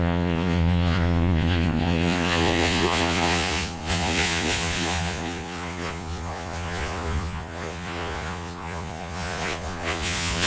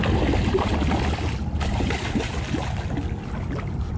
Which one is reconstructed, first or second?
first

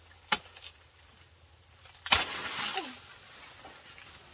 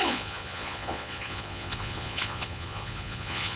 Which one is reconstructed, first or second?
second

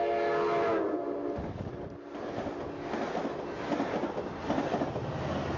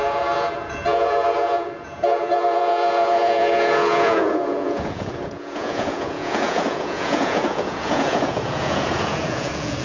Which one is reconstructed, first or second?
second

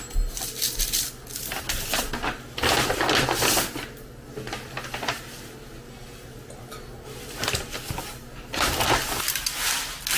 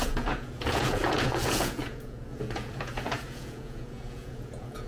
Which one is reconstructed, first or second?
second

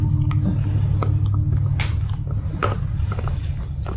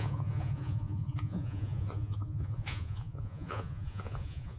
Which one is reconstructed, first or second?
second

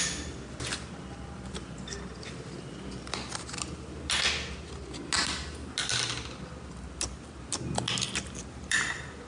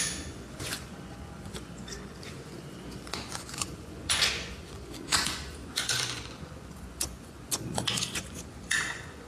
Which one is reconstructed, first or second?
second